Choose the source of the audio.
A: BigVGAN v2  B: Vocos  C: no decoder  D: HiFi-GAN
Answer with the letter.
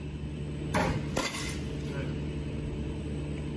C